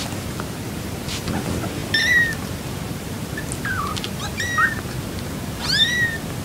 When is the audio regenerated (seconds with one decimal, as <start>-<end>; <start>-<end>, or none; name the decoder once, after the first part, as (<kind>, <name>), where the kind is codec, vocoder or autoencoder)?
none